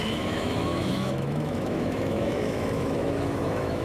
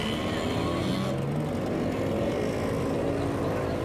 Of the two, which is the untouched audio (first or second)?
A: second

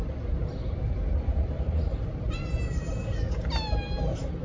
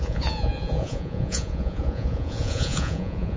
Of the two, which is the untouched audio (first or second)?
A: first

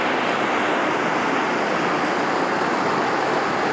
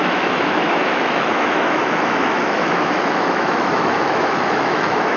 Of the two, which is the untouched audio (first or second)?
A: first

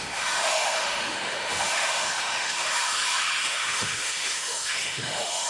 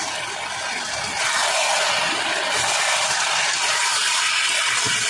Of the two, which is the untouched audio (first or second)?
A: second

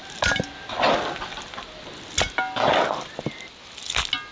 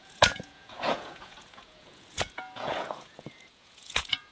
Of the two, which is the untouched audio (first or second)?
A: first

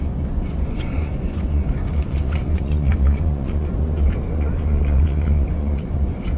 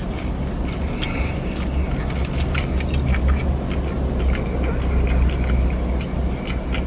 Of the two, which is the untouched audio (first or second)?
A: second